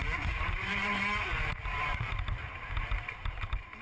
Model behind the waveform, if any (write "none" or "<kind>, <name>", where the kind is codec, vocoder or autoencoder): vocoder, BigVGAN v2